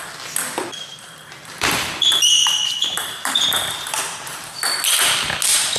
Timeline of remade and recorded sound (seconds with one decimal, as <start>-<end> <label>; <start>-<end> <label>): 0.0-0.9 recorded; 0.9-4.4 remade; 4.4-5.8 recorded